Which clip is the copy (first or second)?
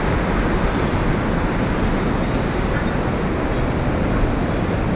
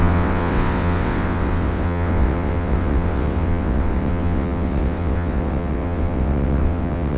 second